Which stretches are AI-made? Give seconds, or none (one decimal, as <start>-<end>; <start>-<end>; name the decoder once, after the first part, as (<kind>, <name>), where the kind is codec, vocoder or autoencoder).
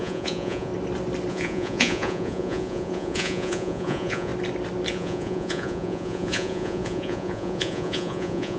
0.0-0.7 (vocoder, Vocos); 1.3-4.3; 4.9-8.6